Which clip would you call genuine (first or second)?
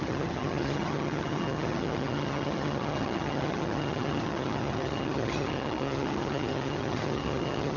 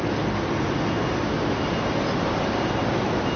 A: second